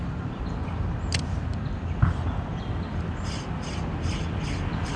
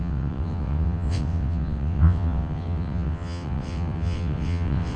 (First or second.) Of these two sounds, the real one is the first